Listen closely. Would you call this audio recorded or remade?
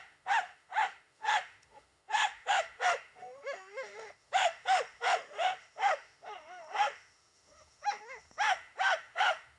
remade